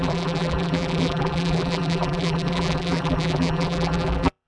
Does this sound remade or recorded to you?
remade